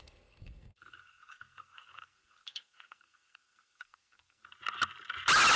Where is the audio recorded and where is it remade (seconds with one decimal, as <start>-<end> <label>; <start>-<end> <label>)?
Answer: 0.0-4.4 remade; 4.4-5.6 recorded